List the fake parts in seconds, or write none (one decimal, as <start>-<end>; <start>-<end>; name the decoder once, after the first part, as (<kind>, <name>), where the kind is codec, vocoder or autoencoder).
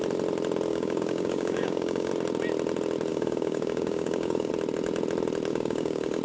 0.7-2.1 (codec, DAC); 3.1-4.5; 5.5-6.2